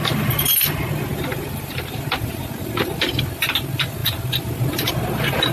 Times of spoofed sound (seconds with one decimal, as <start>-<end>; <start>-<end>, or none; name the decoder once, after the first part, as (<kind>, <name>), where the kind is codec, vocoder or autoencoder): none